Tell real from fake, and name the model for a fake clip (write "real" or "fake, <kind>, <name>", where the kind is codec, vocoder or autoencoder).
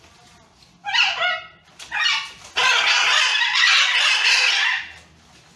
real